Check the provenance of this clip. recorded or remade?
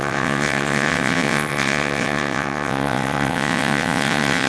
remade